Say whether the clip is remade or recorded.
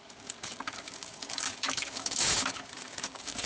remade